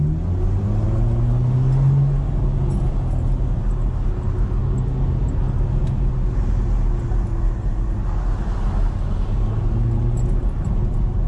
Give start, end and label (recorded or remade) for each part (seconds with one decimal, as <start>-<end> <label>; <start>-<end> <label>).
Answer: 0.0-11.3 recorded